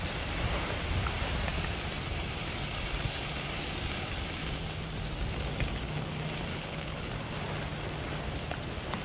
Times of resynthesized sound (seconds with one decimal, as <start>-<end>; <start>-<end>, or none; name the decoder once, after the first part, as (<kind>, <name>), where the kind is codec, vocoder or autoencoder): 6.5-7.1 (codec, HILCodec)